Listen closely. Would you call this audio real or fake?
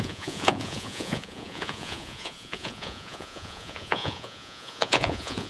fake